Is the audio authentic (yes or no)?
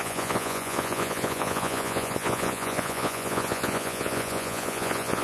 no